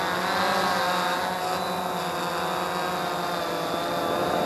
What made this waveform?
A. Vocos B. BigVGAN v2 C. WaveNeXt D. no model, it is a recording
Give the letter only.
D